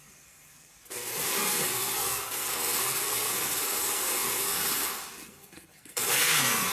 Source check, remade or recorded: remade